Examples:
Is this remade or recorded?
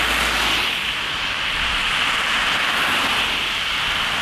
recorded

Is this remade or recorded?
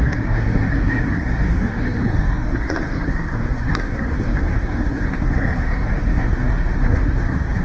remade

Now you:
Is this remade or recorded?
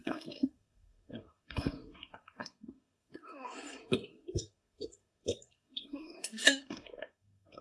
remade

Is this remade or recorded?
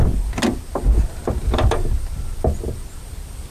recorded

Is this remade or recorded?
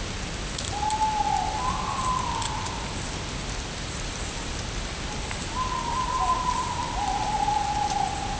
recorded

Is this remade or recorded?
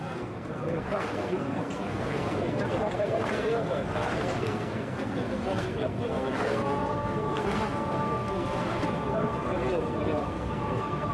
remade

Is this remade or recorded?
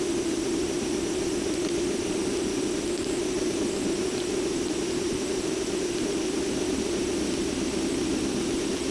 recorded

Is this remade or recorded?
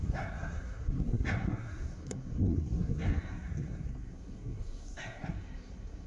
remade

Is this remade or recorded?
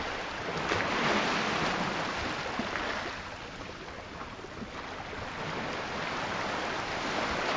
recorded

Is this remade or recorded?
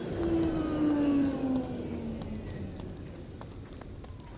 recorded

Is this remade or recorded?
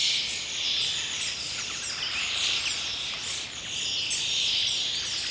recorded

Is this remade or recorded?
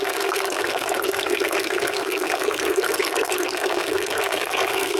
remade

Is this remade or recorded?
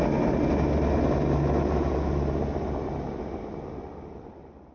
recorded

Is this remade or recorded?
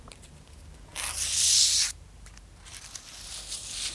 recorded